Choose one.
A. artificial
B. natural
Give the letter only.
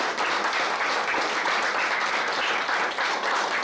B